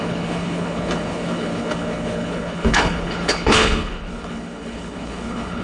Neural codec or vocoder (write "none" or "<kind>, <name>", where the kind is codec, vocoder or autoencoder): codec, HILCodec